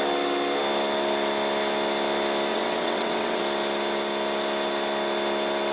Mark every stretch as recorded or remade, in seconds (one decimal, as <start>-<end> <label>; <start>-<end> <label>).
0.0-2.5 recorded; 2.5-3.4 remade; 3.4-5.7 recorded